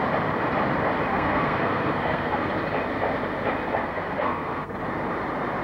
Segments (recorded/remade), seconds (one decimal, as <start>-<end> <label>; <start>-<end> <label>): 0.0-1.1 recorded; 1.1-2.5 remade; 2.5-3.8 recorded; 3.8-4.7 remade; 4.7-5.6 recorded

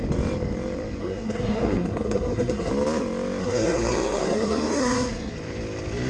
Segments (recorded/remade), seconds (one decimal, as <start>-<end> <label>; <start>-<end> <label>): 0.0-1.0 recorded; 1.0-2.7 remade; 2.7-3.4 recorded; 3.4-5.3 remade; 5.3-6.1 recorded